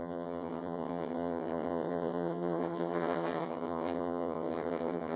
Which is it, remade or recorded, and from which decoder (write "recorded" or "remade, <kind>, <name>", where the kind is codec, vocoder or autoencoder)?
remade, vocoder, HiFi-GAN